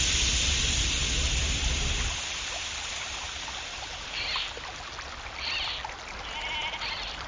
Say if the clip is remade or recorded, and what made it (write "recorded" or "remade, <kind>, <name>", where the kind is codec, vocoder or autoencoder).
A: recorded